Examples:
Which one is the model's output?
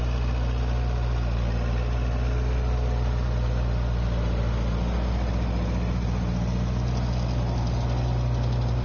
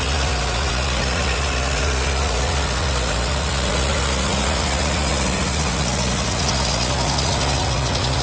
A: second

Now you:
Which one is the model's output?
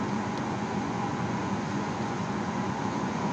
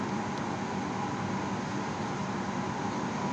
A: first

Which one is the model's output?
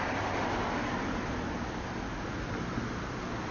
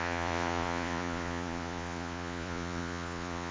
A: second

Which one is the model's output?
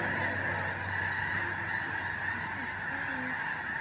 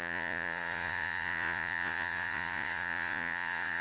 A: second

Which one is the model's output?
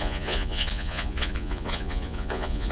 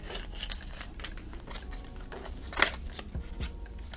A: first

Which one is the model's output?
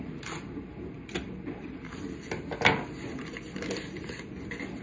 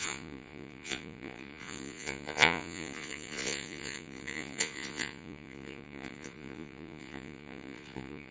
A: second